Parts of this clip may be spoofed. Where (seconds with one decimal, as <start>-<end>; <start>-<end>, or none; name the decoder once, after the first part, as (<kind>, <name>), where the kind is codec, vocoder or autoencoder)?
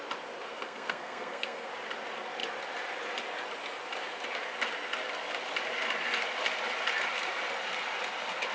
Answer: 0.5-1.7 (codec, SNAC)